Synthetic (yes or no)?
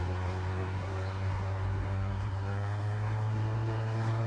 yes